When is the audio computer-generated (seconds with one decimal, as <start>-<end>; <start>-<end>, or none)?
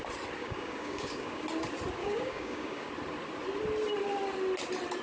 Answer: 0.4-1.4; 2.0-2.9